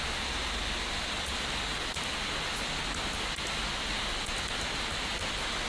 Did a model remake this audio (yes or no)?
no